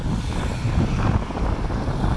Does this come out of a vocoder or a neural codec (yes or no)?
no